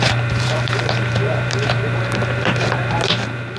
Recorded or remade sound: remade